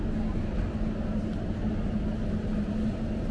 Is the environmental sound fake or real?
real